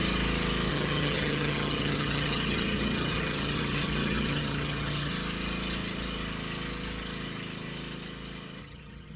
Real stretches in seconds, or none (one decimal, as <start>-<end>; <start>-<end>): 0.0-0.7; 5.1-8.6